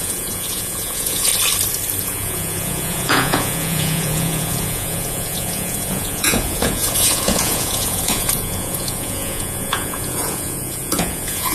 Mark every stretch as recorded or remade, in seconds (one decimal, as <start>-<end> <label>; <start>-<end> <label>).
0.0-1.3 remade; 1.3-2.0 recorded; 2.0-11.5 remade